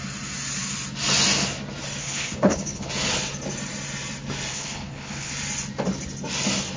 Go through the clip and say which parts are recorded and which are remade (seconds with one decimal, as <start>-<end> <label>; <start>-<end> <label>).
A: 0.0-2.0 recorded; 2.0-2.9 remade; 2.9-4.5 recorded; 4.5-5.3 remade; 5.3-6.8 recorded